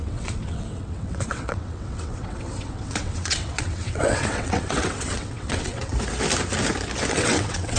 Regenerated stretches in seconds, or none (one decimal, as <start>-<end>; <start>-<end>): 0.0-5.9; 7.1-7.8